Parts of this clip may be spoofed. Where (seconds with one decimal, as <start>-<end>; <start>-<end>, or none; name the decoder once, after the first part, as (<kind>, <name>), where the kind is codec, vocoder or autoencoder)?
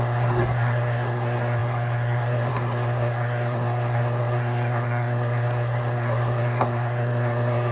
0.0-7.7 (codec, SNAC)